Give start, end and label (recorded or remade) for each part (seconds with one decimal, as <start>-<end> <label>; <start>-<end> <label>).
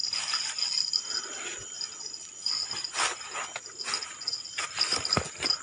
0.0-5.6 recorded